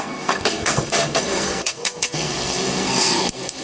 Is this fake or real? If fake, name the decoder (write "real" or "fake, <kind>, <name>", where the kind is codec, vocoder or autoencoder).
fake, codec, SNAC